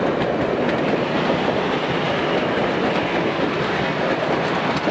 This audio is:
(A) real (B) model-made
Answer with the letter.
A